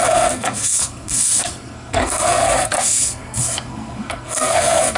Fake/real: fake